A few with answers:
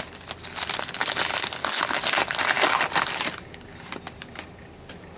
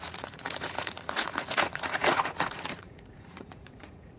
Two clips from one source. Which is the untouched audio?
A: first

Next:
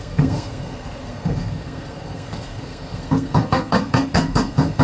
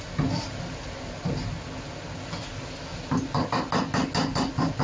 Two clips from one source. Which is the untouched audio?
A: second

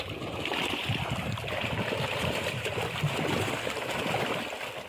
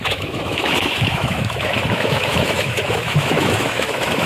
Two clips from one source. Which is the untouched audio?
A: first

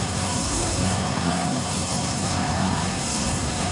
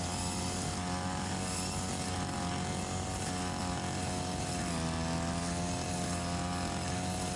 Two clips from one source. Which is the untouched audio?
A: second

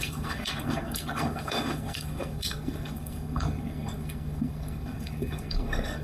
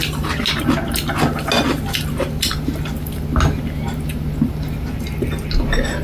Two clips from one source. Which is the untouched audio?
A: second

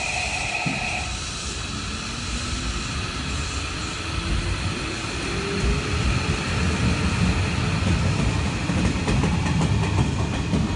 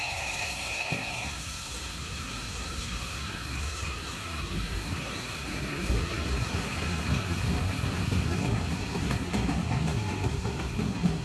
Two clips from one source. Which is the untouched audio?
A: first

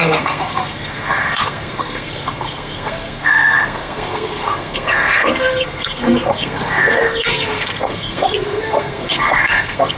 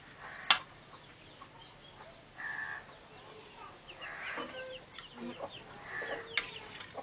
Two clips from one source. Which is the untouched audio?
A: second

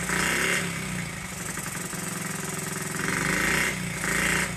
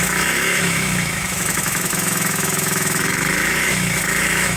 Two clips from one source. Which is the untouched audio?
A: first